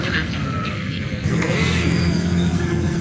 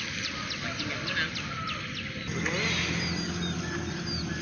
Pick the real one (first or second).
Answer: second